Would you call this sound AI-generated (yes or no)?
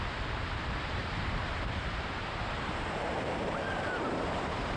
yes